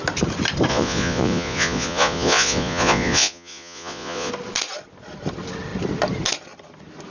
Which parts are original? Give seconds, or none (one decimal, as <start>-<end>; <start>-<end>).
0.0-0.7; 4.3-7.1